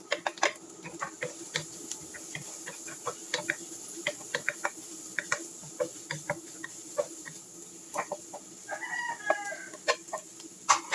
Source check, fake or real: real